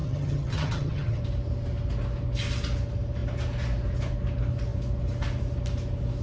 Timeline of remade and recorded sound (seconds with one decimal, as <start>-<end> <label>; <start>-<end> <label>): 0.0-1.2 remade; 1.2-6.2 recorded